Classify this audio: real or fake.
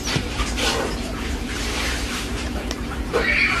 fake